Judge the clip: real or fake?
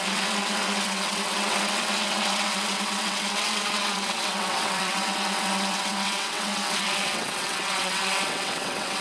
fake